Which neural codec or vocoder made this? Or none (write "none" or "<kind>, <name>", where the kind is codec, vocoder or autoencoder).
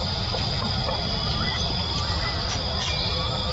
none